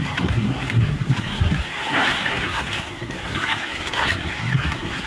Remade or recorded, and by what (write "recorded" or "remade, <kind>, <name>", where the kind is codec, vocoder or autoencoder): remade, codec, SNAC